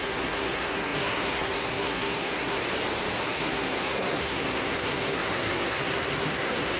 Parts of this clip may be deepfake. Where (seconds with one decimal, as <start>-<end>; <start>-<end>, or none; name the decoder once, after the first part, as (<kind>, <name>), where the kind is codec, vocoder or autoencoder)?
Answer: 0.0-2.6 (codec, SNAC); 3.2-6.8